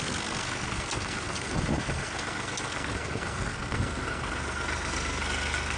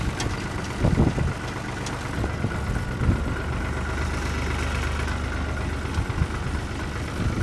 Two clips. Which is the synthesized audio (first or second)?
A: first